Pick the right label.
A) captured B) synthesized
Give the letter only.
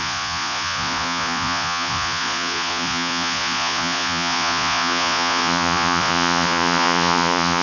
B